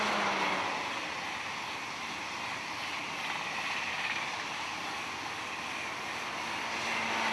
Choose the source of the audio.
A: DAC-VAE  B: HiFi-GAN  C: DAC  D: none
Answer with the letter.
D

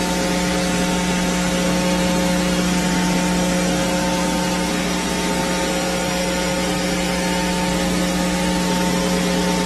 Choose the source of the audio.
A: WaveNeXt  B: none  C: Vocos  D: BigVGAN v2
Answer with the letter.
B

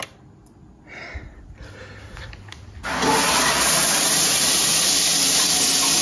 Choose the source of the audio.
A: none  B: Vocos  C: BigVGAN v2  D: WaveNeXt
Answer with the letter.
A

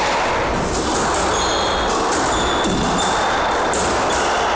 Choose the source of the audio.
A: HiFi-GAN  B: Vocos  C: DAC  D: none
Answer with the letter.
D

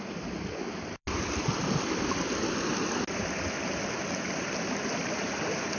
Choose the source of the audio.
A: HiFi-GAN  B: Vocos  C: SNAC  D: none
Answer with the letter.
D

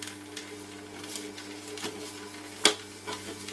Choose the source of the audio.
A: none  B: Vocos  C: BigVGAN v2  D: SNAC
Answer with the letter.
A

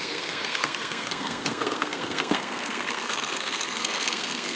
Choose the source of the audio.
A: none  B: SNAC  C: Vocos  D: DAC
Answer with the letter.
B